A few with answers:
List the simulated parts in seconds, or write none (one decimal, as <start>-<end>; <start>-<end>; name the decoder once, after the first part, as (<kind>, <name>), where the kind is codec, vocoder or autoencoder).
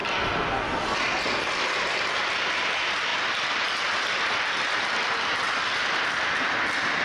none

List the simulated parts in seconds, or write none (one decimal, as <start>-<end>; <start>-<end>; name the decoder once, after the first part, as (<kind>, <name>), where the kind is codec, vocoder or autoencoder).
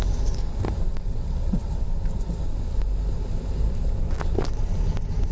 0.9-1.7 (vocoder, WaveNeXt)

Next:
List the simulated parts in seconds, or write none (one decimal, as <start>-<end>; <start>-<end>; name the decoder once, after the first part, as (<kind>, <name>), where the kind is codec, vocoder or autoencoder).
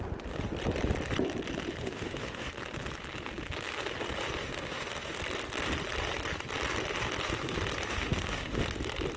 1.8-2.5 (autoencoder, DAC-VAE); 4.4-5.2; 7.9-8.6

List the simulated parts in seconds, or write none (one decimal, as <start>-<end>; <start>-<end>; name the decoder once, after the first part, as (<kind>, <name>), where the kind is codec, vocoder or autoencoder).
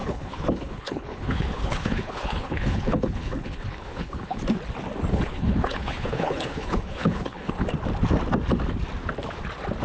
0.0-4.4 (codec, HILCodec); 5.1-7.5